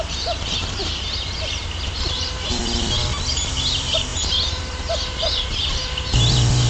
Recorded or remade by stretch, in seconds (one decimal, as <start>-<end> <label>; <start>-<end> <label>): 0.0-2.6 remade; 2.6-3.3 recorded; 3.3-6.7 remade